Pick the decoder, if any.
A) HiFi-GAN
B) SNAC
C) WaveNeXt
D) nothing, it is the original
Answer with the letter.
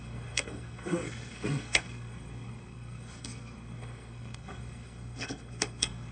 B